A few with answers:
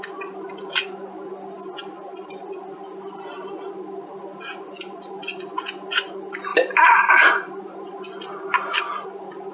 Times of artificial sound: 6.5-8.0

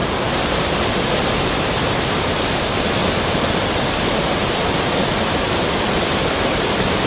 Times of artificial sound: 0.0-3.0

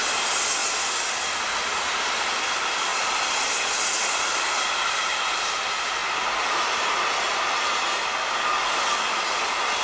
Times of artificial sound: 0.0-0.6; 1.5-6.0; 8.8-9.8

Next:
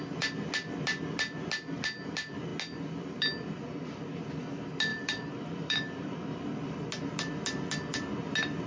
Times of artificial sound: 4.9-6.4

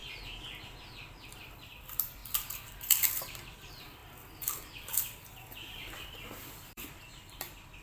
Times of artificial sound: 1.2-2.2; 3.1-7.8

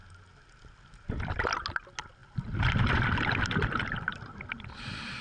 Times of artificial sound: 2.2-4.6

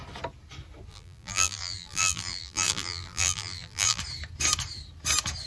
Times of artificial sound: 0.9-4.0

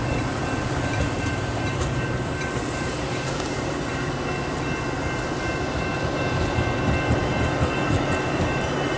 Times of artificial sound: 0.9-4.1